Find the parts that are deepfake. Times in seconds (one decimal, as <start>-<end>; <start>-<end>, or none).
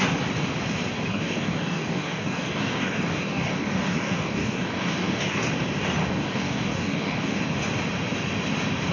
1.1-5.5; 6.0-7.4